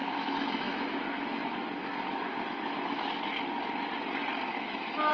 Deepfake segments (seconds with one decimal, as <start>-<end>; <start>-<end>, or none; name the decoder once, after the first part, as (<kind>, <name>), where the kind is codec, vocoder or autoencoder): 0.0-3.1 (autoencoder, DAC-VAE); 4.5-5.1